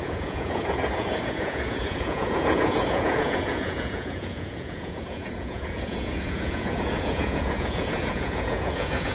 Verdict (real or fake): fake